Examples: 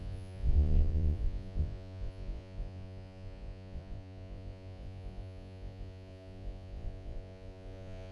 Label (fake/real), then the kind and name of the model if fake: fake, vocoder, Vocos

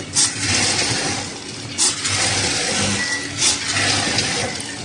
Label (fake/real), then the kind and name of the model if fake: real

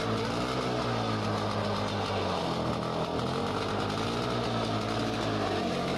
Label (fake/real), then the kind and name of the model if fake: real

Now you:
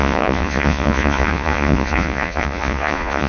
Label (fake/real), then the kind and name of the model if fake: fake, vocoder, Vocos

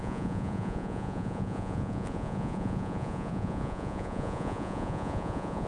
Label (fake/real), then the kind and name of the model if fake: fake, vocoder, Vocos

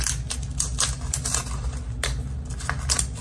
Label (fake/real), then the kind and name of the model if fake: real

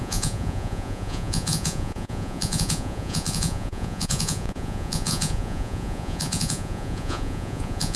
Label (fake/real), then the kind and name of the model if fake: fake, vocoder, Vocos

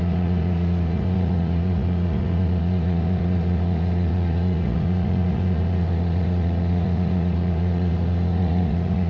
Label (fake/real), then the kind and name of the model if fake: fake, vocoder, Vocos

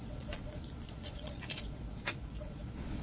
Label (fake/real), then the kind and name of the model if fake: fake, vocoder, Vocos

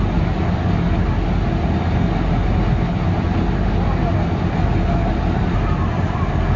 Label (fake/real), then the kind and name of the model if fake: real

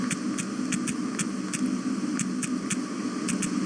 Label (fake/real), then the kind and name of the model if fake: real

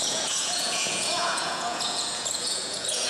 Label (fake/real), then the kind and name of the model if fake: fake, vocoder, Vocos